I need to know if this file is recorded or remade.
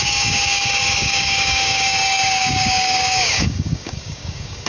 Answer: remade